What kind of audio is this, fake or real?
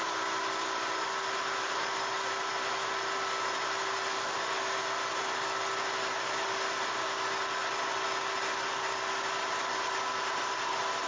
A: real